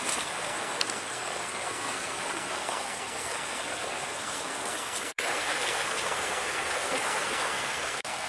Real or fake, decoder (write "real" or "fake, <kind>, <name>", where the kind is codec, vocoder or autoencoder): fake, codec, SNAC